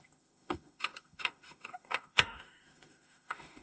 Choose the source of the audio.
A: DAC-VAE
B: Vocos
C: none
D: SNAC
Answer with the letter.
A